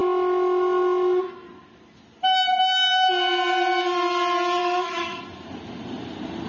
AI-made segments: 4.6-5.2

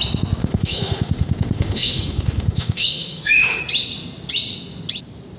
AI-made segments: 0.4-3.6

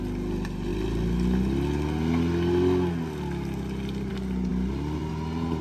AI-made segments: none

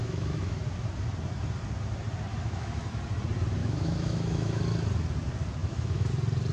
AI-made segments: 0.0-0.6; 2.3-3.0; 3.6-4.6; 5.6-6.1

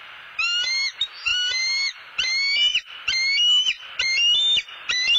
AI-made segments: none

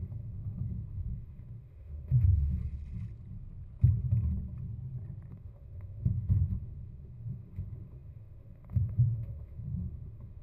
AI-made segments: 0.0-2.6; 5.3-10.4

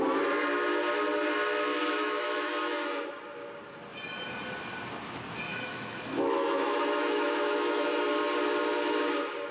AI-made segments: 1.7-3.0; 5.5-8.0